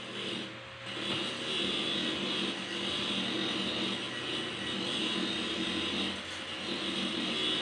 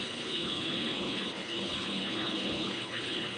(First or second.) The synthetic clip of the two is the second